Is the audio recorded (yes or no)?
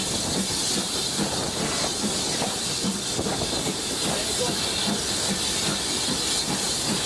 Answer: yes